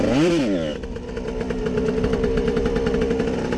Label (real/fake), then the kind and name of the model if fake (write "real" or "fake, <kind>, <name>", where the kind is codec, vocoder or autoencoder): real